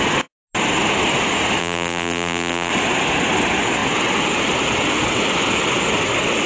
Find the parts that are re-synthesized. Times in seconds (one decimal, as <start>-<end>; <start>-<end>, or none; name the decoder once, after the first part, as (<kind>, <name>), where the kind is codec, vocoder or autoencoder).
1.6-2.7 (vocoder, BigVGAN v2)